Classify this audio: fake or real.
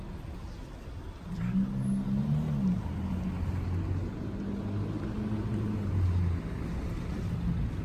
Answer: real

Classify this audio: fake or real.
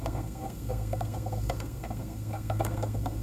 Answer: fake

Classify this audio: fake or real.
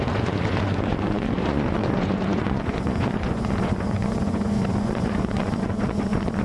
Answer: fake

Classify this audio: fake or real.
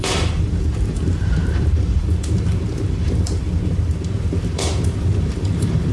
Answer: fake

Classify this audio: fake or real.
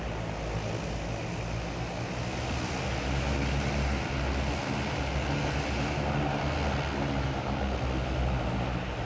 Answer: real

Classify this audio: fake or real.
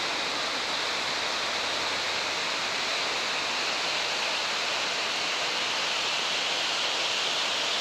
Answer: real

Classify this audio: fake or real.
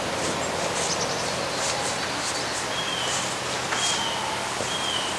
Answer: real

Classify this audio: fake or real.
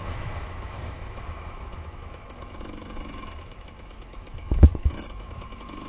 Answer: fake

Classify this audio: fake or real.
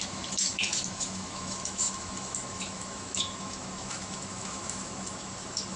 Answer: fake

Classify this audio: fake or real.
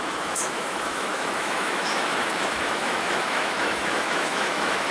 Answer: fake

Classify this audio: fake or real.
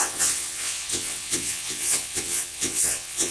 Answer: fake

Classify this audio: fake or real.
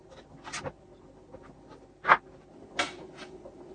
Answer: real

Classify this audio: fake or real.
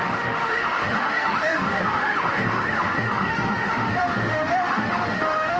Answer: fake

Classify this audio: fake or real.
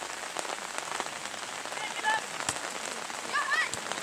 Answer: real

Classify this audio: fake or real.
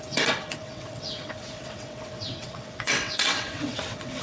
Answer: fake